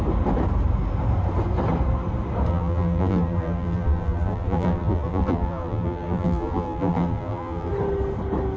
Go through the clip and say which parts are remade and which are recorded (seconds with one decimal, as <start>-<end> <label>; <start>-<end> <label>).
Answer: 0.0-2.5 recorded; 2.5-7.7 remade; 7.7-8.6 recorded